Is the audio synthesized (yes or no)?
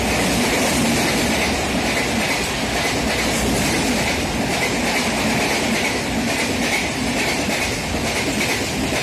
no